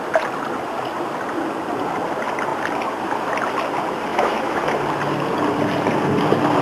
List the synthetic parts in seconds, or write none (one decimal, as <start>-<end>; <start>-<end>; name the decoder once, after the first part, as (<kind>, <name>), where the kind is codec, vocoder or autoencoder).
4.1-4.6 (autoencoder, DAC-VAE)